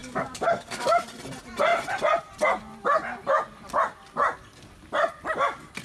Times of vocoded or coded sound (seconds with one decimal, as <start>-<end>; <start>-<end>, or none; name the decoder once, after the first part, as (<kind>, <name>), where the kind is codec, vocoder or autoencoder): 0.0-1.0 (codec, DAC)